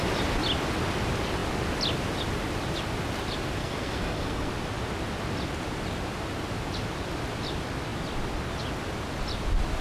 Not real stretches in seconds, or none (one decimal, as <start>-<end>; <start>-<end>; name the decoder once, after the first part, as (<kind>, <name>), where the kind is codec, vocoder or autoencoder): 3.6-4.5 (codec, SNAC)